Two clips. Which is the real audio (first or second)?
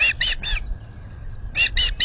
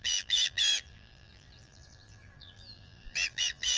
first